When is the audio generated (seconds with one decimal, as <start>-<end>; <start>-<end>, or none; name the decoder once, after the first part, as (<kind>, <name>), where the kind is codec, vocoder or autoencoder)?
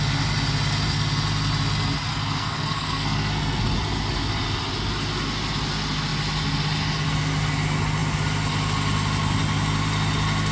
2.1-3.6 (codec, SNAC)